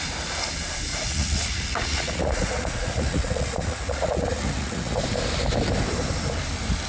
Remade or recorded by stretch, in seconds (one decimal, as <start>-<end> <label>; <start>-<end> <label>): 0.0-0.9 recorded; 0.9-5.0 remade; 5.0-6.9 recorded